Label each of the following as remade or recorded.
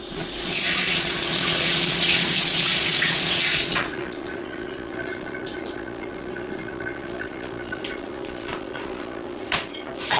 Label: remade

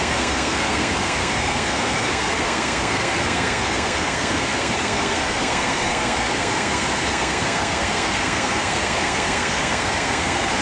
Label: remade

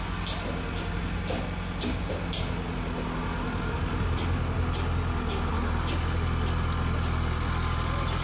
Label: recorded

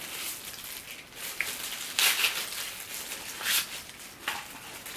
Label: recorded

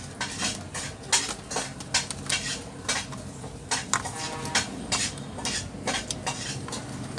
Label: recorded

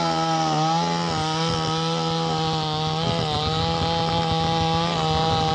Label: recorded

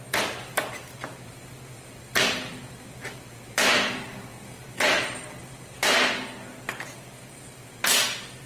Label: recorded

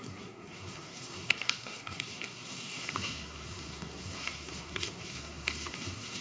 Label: remade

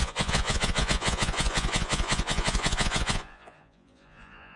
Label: remade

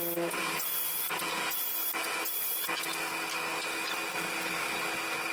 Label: recorded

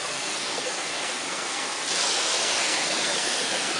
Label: remade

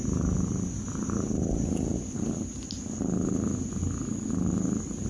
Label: recorded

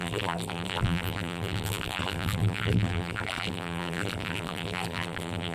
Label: remade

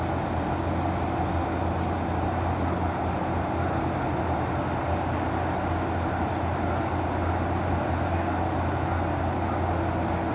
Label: recorded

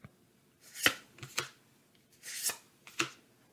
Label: recorded